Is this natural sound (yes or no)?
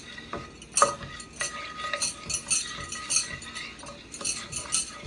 yes